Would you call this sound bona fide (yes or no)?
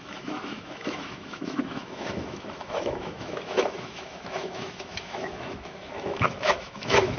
no